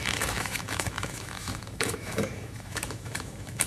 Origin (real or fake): fake